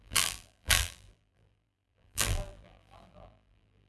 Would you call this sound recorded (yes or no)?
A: no